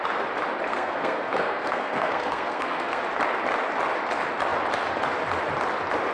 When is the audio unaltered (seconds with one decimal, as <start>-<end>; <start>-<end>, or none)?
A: 0.0-0.7; 3.0-6.1